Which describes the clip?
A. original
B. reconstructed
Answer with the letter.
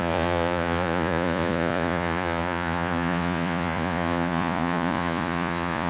B